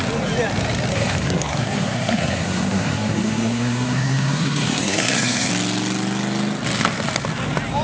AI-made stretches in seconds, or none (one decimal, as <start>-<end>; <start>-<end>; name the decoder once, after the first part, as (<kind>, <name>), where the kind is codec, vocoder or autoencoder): 0.9-5.5 (codec, SNAC)